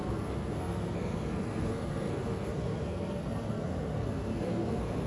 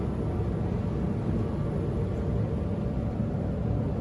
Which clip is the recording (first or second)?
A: second